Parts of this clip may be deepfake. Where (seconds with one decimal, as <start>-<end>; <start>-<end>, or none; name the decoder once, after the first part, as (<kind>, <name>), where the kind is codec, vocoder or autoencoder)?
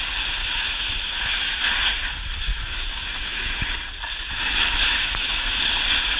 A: 0.4-1.6 (autoencoder, DAC-VAE); 2.5-3.6; 4.1-5.6